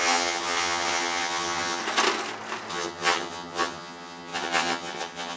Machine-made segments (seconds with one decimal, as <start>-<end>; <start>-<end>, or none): 0.0-1.8; 2.7-5.4